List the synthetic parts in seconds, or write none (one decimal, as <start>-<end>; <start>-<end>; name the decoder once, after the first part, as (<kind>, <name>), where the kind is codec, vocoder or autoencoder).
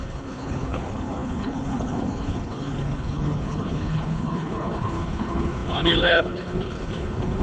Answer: 0.0-7.4 (codec, HILCodec)